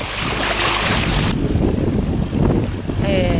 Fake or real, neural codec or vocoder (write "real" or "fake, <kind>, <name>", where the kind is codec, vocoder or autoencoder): real